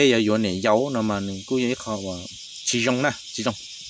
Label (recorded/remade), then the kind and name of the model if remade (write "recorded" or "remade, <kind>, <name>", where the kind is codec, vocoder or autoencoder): recorded